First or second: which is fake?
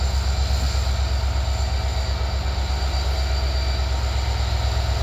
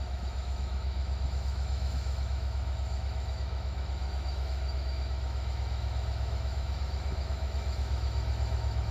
second